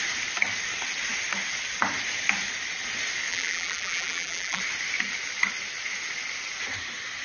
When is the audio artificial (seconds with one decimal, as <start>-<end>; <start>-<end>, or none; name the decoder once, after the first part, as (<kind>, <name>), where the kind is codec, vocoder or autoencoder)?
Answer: 3.3-4.6 (vocoder, BigVGAN v2)